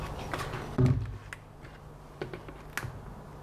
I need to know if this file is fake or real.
real